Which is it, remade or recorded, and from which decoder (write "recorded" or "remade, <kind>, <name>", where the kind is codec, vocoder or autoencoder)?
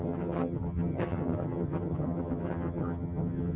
remade, vocoder, HiFi-GAN